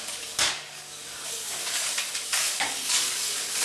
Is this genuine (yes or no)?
no